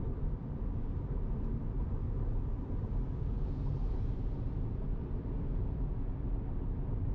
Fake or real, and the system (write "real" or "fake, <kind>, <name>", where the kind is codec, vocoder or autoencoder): fake, vocoder, BigVGAN v2